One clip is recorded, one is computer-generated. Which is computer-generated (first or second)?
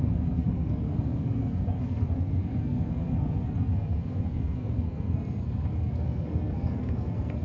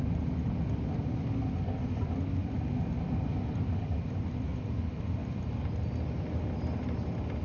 first